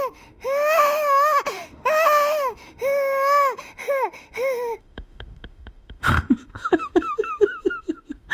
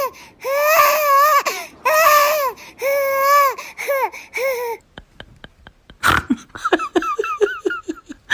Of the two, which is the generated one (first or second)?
first